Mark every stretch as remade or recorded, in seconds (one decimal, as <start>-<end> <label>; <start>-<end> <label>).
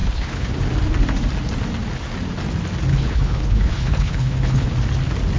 0.0-0.5 remade; 0.5-2.9 recorded; 2.9-4.7 remade; 4.7-5.4 recorded